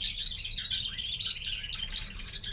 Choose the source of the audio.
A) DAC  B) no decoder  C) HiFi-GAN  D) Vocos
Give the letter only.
B